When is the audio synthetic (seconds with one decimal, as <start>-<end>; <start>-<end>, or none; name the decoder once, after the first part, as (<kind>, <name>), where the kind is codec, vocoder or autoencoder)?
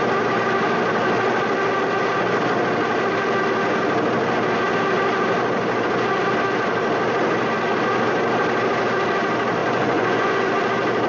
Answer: 9.6-10.5 (vocoder, Vocos)